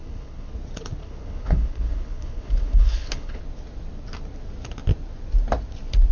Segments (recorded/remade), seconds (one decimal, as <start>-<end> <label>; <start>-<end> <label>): 0.0-0.5 remade; 0.5-1.0 recorded; 1.0-3.4 remade; 3.4-6.1 recorded